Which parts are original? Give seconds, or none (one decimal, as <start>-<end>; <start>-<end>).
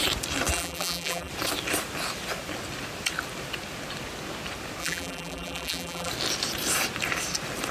0.0-0.5; 1.3-4.8; 6.1-7.7